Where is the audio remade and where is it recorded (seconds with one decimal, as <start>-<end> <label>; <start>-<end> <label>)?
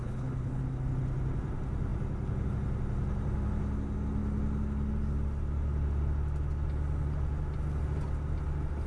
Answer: 0.0-0.6 remade; 0.6-8.9 recorded